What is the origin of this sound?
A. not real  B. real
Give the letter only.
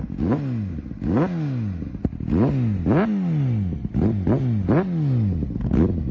B